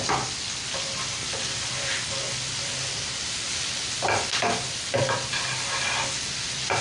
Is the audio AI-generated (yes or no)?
no